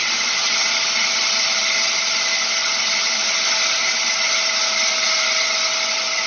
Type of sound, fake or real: real